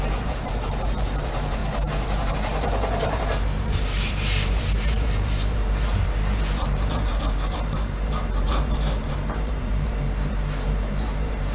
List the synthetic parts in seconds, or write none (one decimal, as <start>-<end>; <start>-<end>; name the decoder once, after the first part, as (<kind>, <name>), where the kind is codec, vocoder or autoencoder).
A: 0.0-1.6 (vocoder, BigVGAN v2); 2.3-11.5